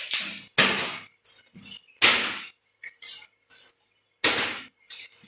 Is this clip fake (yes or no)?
no